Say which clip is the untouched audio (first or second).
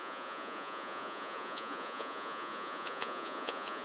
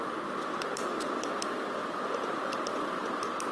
second